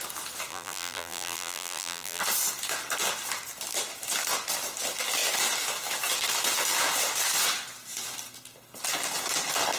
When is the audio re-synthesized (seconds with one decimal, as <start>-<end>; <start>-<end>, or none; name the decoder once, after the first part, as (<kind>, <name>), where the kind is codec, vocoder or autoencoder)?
0.5-2.2 (vocoder, BigVGAN v2)